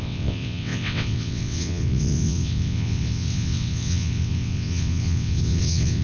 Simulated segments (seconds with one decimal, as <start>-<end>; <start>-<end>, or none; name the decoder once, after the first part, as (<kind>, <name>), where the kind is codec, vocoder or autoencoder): 0.0-6.0 (vocoder, WaveNeXt)